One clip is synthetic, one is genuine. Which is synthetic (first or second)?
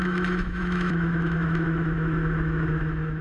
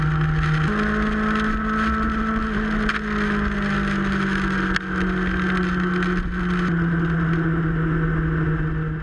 first